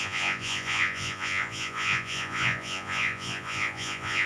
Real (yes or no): no